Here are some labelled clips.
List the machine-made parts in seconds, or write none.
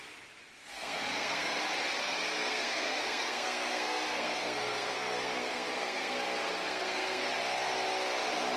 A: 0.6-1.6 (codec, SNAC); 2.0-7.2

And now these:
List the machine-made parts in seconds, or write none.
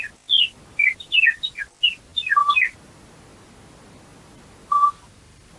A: none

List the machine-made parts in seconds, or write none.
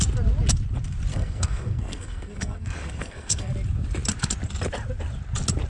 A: 1.1-3.5 (codec, SNAC)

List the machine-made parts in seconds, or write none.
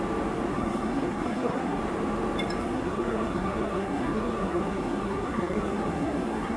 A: 0.5-1.8 (codec, SNAC); 2.6-6.6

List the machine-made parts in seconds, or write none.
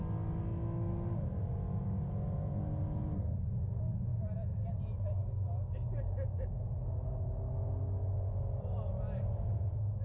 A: none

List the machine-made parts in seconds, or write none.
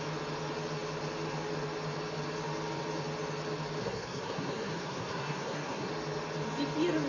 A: 3.8-5.9 (codec, SNAC)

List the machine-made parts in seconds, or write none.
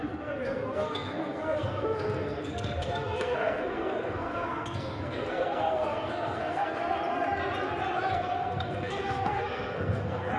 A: 0.0-6.8 (codec, SNAC); 8.1-10.4